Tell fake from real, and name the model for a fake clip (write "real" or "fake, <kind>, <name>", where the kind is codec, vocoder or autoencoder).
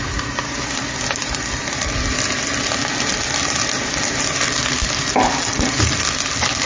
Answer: real